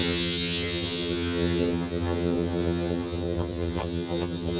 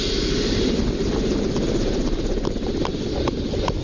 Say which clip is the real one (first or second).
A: second